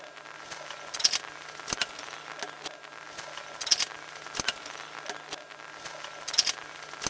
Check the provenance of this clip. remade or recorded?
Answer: recorded